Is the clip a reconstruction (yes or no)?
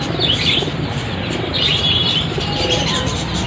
yes